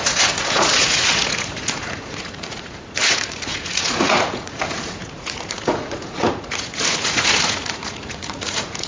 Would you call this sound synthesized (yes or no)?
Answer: yes